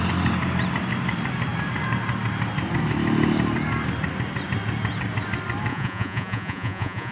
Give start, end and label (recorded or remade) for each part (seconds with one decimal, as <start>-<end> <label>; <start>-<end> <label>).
0.0-5.7 recorded; 5.7-7.1 remade